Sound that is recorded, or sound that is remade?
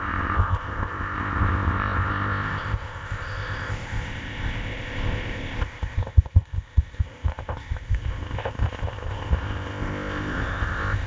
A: remade